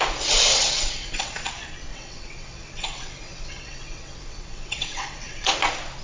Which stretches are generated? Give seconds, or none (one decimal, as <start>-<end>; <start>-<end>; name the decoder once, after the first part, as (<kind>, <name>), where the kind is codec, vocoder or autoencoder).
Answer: 0.5-1.5 (vocoder, WaveNeXt); 1.9-5.5